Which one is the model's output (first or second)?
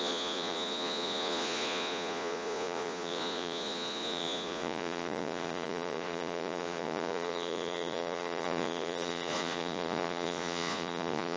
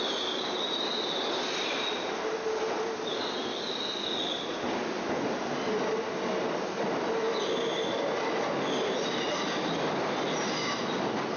first